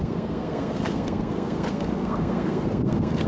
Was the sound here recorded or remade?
remade